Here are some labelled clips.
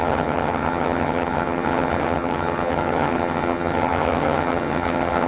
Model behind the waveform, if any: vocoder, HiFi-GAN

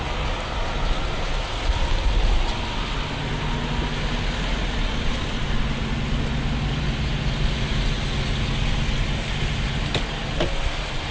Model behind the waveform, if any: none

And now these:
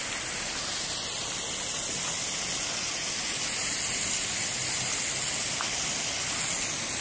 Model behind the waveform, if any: none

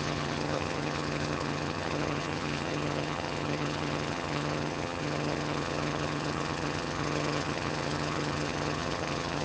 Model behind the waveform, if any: vocoder, HiFi-GAN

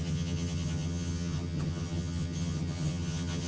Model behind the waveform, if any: vocoder, HiFi-GAN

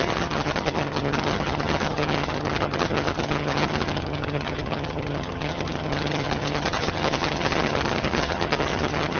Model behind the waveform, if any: vocoder, HiFi-GAN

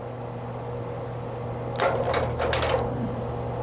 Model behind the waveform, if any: none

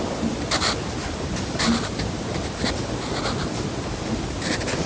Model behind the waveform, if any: none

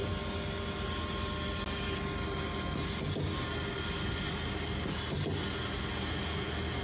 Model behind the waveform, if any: none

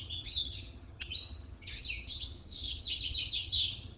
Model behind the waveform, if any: vocoder, HiFi-GAN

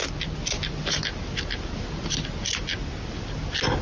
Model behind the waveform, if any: none